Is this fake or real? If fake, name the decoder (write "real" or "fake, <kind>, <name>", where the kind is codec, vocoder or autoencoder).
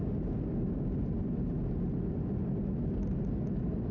real